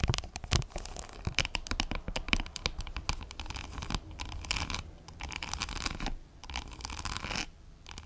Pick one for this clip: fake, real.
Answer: real